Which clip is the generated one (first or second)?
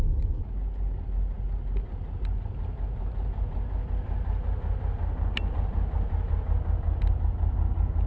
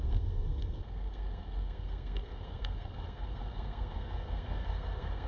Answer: second